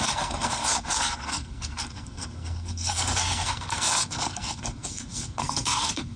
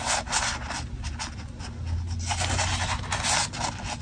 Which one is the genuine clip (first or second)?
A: second